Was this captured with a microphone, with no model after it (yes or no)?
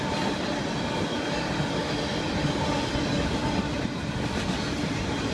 yes